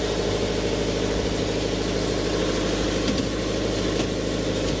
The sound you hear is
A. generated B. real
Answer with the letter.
B